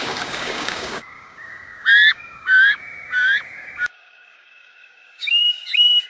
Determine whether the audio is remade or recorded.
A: remade